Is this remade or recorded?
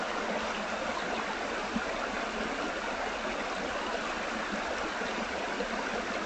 recorded